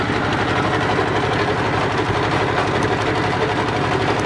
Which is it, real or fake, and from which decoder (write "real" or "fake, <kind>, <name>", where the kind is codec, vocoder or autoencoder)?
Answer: real